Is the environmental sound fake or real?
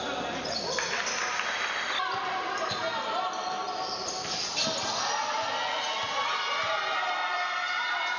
real